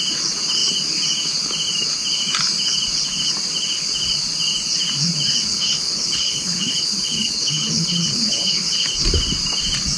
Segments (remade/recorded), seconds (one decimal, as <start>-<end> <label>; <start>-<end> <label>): 0.0-5.5 recorded; 5.5-9.0 remade; 9.0-10.0 recorded